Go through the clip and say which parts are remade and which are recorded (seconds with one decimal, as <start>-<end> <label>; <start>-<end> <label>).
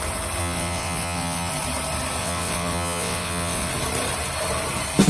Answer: 0.0-0.4 recorded; 0.4-1.5 remade; 1.5-2.2 recorded; 2.2-3.7 remade; 3.7-5.1 recorded